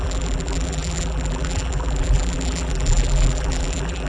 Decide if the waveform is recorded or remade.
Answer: remade